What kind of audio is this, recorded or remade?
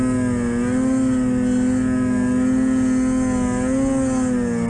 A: recorded